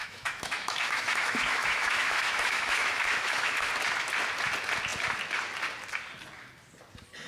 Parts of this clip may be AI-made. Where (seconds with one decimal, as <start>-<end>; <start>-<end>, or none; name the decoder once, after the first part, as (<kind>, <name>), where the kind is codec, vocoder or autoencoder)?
0.0-3.7 (autoencoder, DAC-VAE)